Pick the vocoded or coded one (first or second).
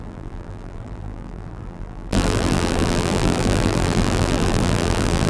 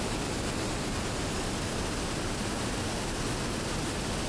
first